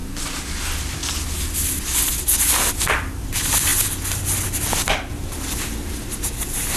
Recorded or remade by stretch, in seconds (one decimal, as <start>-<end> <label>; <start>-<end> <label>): 0.0-6.8 recorded